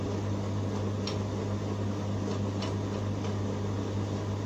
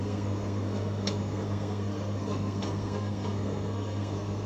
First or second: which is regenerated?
second